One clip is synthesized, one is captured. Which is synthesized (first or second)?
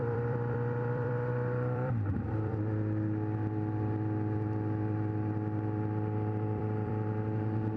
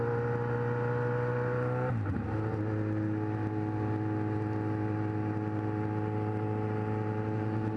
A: first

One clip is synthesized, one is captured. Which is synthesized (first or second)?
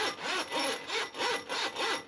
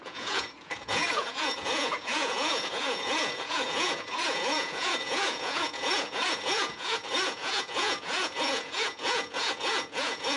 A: second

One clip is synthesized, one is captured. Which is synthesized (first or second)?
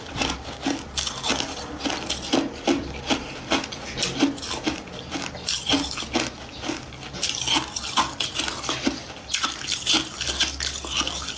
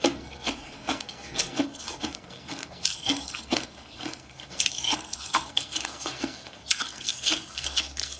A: second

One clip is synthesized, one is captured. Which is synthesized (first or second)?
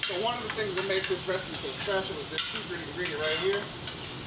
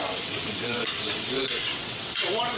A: second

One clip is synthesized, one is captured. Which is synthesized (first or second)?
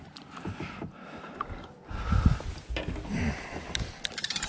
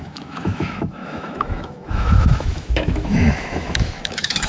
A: second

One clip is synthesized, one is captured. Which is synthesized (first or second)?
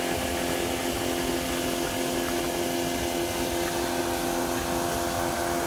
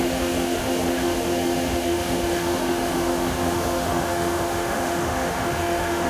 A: second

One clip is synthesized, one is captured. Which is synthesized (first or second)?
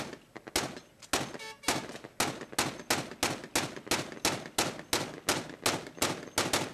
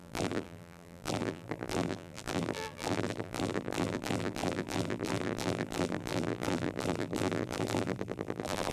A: second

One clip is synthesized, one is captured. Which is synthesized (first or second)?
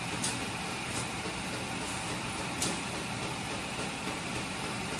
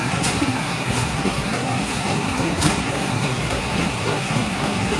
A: second